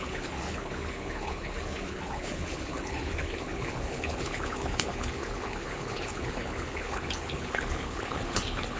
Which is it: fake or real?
fake